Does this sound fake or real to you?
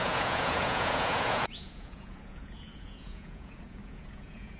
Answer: fake